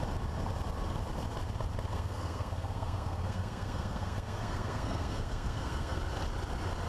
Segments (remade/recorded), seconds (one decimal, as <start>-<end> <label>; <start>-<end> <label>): 0.0-1.9 recorded; 1.9-6.0 remade; 6.0-6.9 recorded